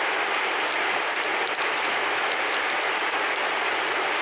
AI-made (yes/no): no